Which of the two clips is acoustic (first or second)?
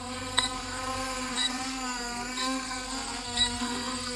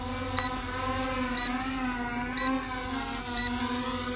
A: second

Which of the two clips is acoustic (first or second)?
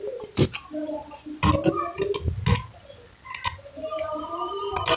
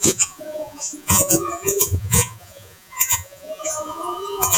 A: first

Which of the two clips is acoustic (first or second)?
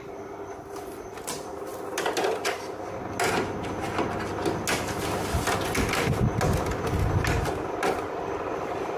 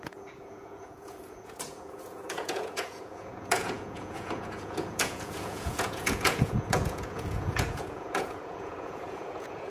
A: first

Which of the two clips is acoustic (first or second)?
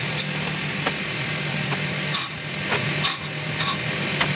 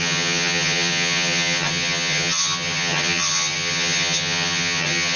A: first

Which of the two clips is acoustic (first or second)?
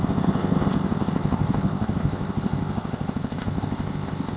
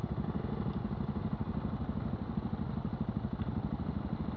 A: second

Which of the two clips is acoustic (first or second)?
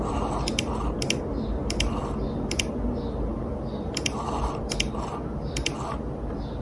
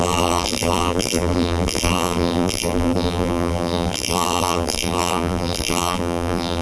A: first